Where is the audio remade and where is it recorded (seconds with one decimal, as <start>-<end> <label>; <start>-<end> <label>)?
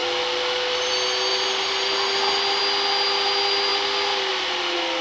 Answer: 0.0-5.0 recorded